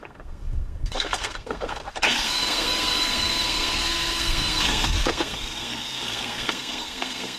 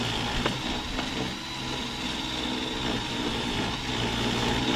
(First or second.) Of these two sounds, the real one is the second